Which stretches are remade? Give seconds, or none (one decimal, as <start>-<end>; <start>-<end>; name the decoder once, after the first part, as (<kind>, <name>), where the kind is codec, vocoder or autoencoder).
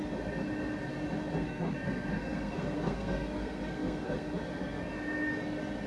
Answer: 1.4-4.9 (codec, SNAC)